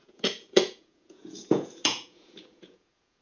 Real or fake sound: fake